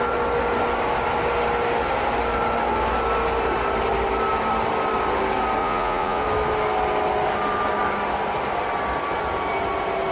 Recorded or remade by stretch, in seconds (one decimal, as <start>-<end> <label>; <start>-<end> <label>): 0.0-5.6 recorded; 5.6-6.2 remade; 6.2-10.1 recorded